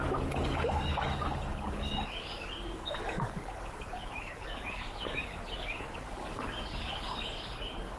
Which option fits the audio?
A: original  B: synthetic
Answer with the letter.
B